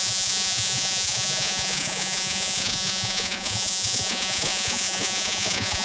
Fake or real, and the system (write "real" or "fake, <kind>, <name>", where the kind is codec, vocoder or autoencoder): fake, vocoder, Vocos